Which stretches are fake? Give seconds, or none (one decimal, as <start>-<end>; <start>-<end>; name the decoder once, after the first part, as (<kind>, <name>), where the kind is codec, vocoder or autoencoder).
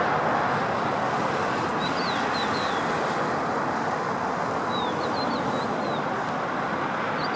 none